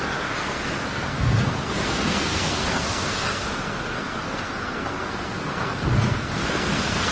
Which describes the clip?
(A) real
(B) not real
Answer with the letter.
B